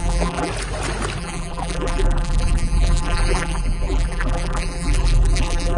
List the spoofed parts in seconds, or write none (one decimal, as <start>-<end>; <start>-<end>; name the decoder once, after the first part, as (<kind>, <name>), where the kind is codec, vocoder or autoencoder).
0.0-0.5 (vocoder, BigVGAN v2); 1.2-5.8